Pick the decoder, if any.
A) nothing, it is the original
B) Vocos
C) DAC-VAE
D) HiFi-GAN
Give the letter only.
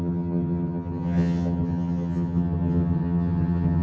D